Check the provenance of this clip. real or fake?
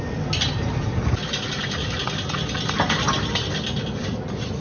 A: real